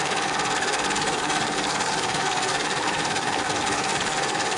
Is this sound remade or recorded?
remade